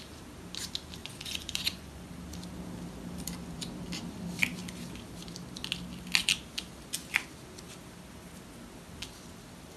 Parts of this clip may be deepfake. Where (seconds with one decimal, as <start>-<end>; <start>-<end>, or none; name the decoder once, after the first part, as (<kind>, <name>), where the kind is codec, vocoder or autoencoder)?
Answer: 1.0-2.1 (vocoder, Vocos)